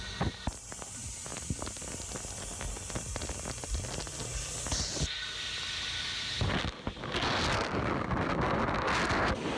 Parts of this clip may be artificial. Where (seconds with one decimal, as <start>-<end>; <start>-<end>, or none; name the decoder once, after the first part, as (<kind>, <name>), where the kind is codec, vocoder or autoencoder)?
none